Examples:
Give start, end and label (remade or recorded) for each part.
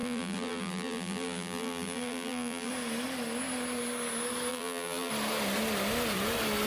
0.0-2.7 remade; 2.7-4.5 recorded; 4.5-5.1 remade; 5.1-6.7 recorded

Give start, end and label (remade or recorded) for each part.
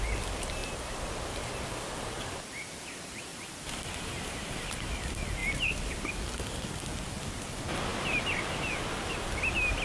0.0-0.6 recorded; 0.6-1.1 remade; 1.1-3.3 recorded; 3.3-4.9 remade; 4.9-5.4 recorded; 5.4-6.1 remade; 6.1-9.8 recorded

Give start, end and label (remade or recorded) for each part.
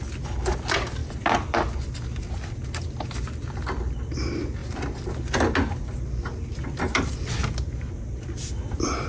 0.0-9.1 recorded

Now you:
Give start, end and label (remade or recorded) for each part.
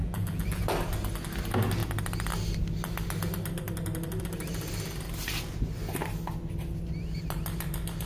0.0-0.6 remade; 0.6-8.1 recorded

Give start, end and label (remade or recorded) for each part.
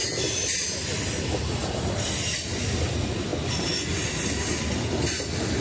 0.0-1.1 remade; 1.1-5.6 recorded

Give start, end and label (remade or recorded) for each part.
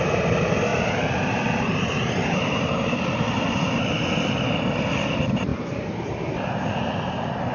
0.0-0.7 recorded; 0.7-3.9 remade; 3.9-5.5 recorded; 5.5-7.5 remade